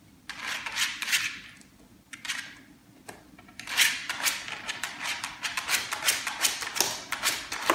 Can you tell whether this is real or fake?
real